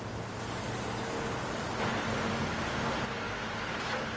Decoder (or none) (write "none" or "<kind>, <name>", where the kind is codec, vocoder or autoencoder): none